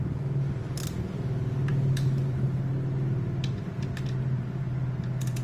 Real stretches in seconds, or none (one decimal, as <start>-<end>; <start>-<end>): 0.0-5.4